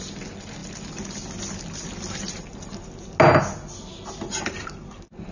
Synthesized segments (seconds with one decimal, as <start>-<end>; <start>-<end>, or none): none